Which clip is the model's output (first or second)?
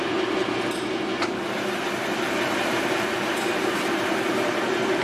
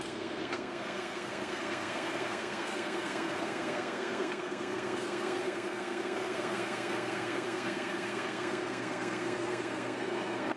second